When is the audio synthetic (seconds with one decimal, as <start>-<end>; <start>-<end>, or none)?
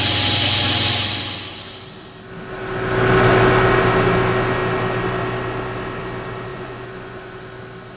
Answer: 6.5-7.4